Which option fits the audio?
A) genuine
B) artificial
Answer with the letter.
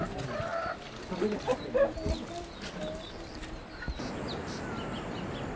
A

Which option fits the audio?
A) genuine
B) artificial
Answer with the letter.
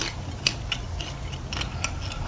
A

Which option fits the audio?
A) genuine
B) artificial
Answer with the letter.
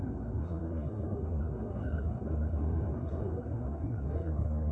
B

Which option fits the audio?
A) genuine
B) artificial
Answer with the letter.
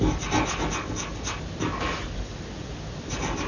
A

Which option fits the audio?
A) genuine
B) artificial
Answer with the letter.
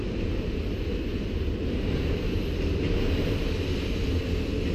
A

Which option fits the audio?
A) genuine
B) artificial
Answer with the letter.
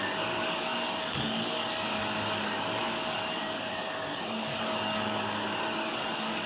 B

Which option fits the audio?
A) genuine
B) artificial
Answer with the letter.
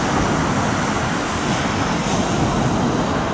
A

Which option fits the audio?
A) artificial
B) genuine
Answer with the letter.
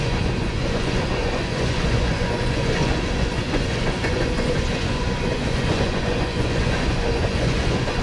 A